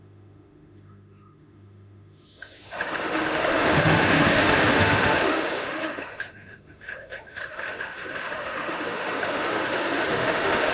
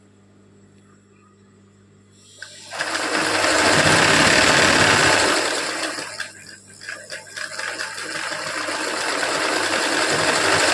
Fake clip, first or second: first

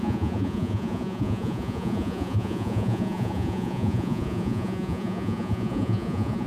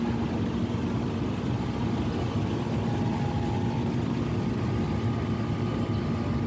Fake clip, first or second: first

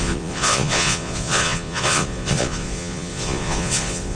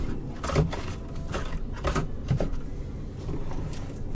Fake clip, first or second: first